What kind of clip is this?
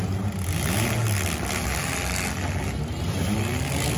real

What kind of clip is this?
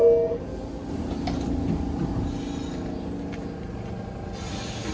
real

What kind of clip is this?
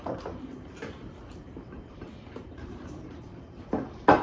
fake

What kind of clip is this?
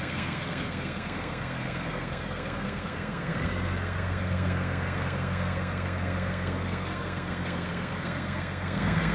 fake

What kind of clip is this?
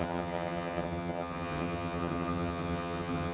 fake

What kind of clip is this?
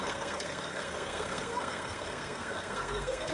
fake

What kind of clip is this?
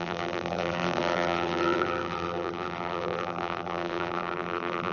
fake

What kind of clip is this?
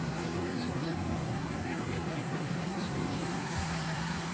fake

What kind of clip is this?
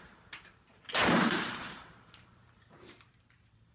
fake